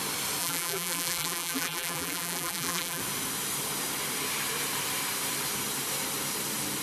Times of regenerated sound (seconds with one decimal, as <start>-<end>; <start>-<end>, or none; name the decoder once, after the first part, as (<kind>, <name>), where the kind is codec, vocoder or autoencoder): 0.4-3.0 (vocoder, BigVGAN v2)